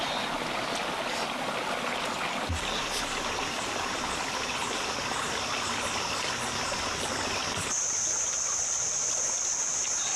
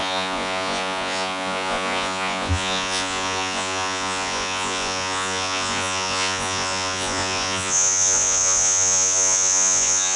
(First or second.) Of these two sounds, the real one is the first